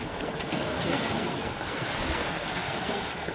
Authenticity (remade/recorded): remade